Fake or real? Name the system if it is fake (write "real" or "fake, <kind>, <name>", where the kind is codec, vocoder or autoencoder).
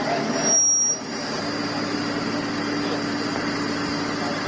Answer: real